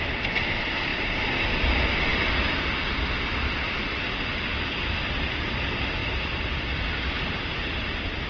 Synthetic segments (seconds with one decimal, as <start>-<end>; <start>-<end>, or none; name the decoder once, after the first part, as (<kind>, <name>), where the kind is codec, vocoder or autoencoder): none